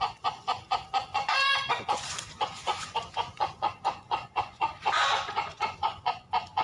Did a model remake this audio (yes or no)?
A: yes